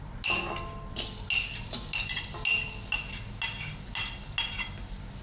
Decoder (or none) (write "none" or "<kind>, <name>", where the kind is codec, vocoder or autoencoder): none